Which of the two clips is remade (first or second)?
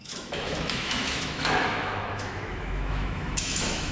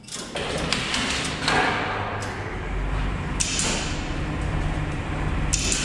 first